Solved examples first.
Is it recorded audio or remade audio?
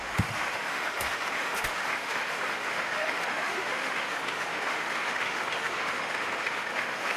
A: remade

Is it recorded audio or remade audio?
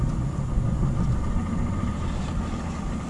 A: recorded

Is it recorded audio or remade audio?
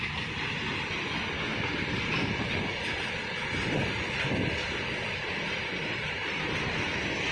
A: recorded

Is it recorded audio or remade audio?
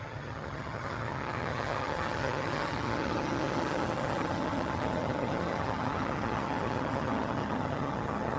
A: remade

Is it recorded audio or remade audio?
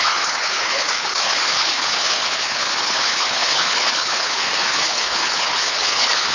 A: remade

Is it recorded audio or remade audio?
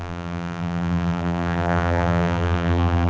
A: remade